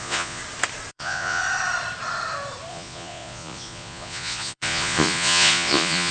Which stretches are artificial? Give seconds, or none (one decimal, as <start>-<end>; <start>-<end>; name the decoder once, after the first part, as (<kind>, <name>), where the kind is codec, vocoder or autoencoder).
0.0-0.4 (vocoder, Vocos); 0.9-1.4; 2.7-6.1